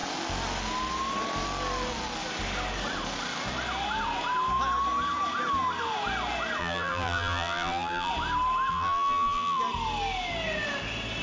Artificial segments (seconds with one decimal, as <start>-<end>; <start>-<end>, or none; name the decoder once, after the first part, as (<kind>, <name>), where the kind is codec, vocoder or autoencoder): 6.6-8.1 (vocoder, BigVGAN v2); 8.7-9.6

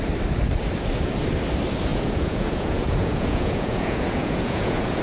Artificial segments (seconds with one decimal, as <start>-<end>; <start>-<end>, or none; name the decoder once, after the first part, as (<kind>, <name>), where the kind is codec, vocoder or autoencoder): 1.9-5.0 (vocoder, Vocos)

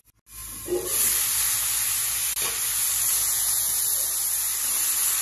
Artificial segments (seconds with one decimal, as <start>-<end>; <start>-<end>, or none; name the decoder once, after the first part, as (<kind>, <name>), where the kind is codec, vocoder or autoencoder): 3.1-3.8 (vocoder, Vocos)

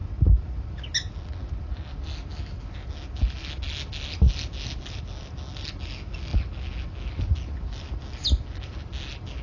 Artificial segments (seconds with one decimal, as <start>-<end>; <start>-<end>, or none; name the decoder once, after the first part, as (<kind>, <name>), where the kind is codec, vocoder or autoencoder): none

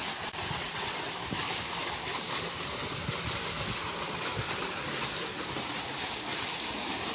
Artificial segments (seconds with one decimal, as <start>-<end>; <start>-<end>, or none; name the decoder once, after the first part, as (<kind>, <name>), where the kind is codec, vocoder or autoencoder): 0.0-1.1 (vocoder, WaveNeXt)